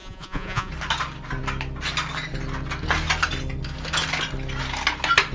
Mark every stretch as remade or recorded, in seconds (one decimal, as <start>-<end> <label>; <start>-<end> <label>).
0.0-0.7 remade; 0.7-5.3 recorded